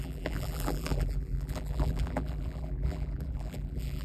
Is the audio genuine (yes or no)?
no